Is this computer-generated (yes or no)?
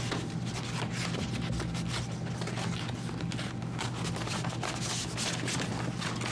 no